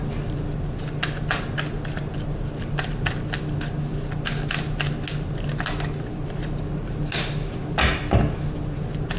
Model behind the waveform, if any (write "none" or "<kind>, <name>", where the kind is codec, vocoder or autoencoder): none